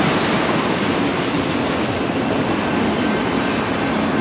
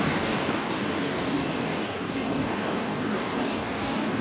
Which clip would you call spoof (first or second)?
second